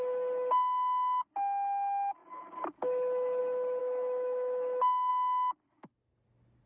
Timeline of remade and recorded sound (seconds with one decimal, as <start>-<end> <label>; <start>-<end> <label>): 0.0-3.8 recorded; 3.8-5.1 remade; 5.1-6.7 recorded